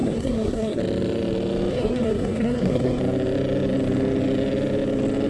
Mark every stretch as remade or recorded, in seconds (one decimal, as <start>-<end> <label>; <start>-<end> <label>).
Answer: 0.0-0.8 remade; 0.8-1.7 recorded; 1.7-3.0 remade; 3.0-5.3 recorded